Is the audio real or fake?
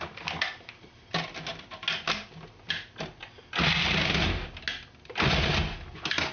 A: real